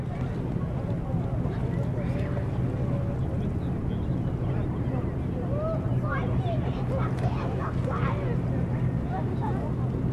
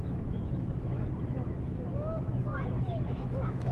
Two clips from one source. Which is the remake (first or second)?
second